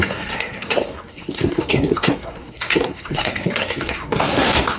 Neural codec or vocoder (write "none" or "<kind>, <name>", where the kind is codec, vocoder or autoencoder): codec, SNAC